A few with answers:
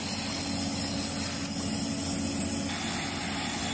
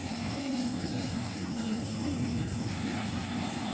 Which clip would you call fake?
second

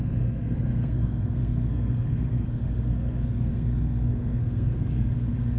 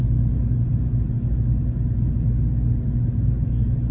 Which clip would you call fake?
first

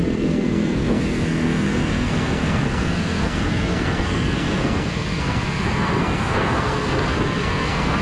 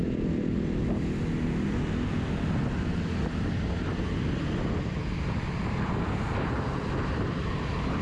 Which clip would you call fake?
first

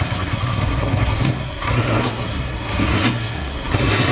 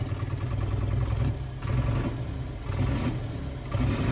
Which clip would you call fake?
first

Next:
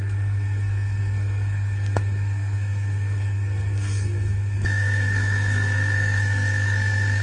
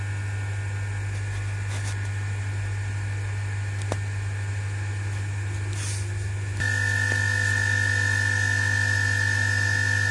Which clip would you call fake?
first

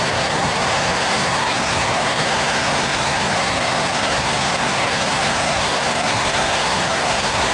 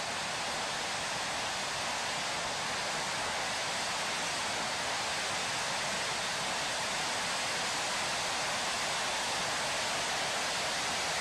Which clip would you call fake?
first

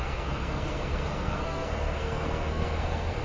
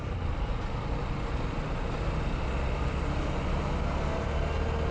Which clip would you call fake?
first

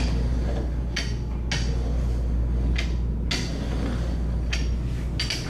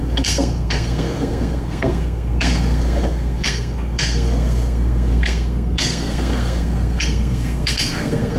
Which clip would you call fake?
second